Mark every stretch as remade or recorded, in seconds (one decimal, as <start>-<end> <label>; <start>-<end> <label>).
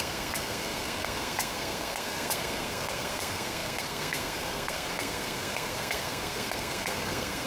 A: 0.0-7.5 remade